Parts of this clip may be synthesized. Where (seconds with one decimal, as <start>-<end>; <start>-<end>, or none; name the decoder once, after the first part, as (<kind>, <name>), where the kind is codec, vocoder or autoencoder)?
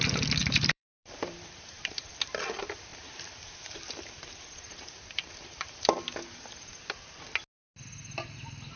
0.4-2.1 (vocoder, BigVGAN v2); 2.9-6.0